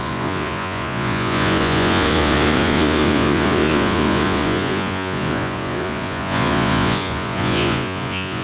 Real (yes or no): no